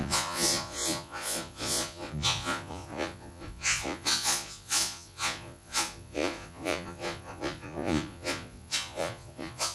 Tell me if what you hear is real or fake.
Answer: fake